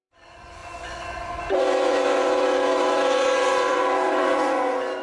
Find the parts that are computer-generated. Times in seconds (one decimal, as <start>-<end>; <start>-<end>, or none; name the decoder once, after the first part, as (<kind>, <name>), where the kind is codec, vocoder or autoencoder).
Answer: 0.0-5.0 (vocoder, Vocos)